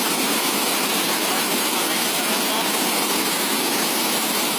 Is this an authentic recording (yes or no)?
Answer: yes